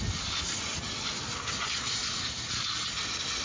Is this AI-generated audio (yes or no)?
no